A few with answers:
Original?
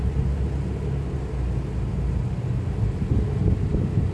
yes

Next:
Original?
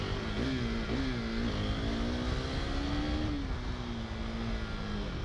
yes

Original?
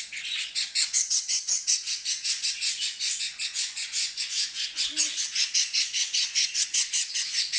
no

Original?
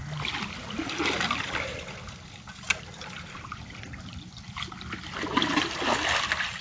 yes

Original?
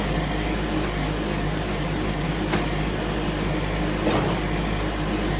yes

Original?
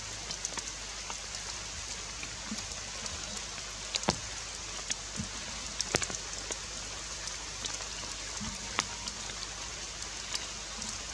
yes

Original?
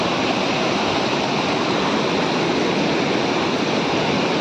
yes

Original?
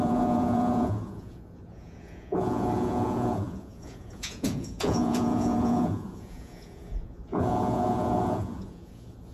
no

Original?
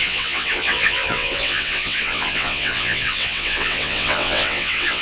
no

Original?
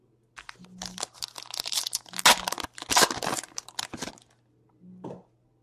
yes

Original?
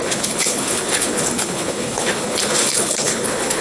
no